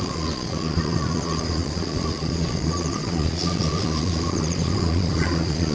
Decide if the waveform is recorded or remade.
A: remade